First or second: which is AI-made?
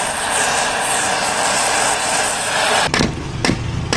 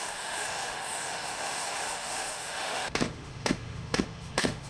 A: second